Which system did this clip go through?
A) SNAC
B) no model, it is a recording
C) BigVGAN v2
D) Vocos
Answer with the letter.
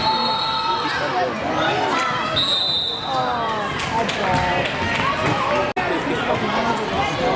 B